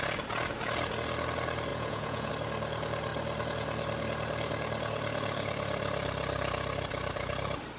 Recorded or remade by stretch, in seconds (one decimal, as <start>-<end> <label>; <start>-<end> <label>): 0.0-1.7 recorded; 1.7-2.3 remade; 2.3-7.8 recorded